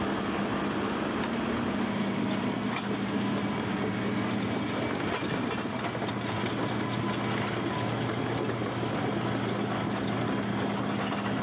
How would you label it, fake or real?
real